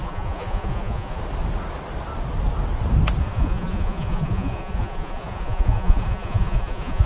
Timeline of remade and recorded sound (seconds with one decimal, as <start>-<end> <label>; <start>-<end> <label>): 0.0-1.2 remade; 1.2-3.2 recorded; 3.2-7.1 remade